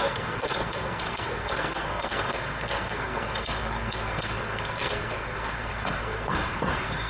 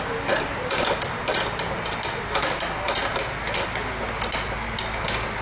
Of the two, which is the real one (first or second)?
second